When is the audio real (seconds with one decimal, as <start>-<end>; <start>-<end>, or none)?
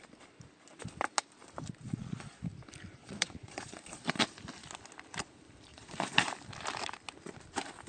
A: 0.0-1.8; 2.4-3.0; 4.3-5.7; 6.3-7.9